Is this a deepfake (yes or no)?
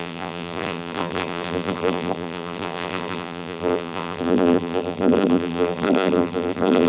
yes